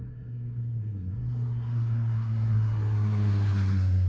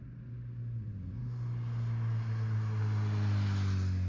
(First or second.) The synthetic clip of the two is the first